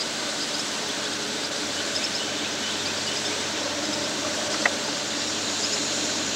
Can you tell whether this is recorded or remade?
remade